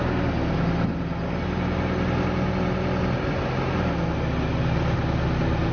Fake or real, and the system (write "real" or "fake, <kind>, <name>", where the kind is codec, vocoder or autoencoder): real